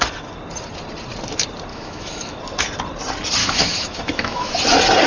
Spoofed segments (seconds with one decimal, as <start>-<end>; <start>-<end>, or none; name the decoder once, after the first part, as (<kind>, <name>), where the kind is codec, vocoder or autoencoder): 1.7-2.4 (autoencoder, DAC-VAE); 3.4-4.5